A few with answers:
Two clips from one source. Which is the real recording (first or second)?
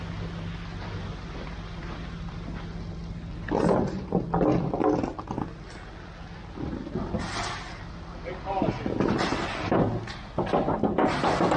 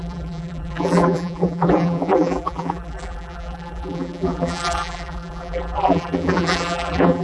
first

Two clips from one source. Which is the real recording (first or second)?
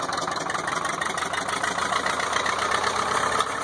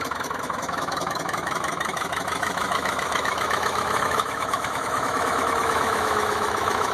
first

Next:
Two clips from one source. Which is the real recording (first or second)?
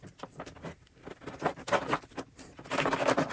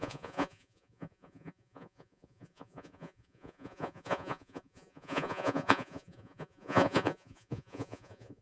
first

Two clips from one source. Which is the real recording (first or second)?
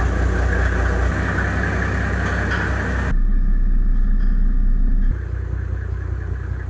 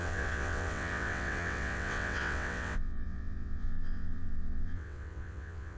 first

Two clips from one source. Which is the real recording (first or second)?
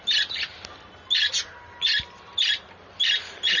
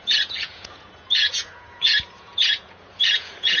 first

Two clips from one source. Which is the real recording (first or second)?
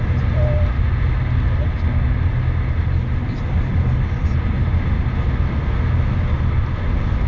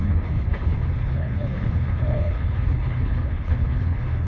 first